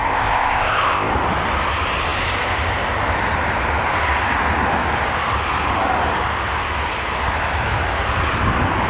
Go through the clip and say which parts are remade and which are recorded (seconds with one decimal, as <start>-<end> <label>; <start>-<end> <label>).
0.0-1.1 remade; 1.1-8.9 recorded